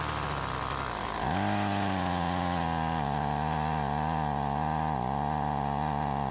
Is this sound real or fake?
real